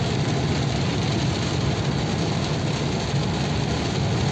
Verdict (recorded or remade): recorded